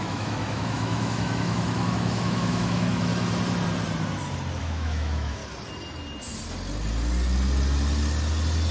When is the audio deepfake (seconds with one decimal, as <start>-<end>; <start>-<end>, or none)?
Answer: 0.0-3.1; 4.6-5.4